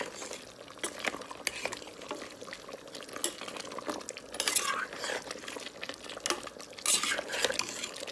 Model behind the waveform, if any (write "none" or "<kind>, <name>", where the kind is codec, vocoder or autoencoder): none